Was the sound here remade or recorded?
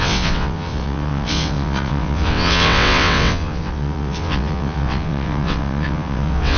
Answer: remade